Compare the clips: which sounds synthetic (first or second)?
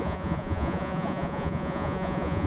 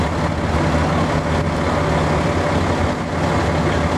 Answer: first